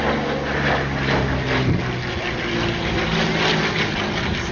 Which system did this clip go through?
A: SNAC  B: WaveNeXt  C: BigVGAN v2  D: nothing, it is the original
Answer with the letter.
D